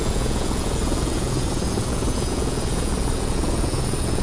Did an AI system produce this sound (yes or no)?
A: yes